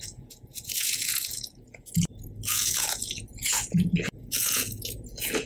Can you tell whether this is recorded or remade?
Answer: remade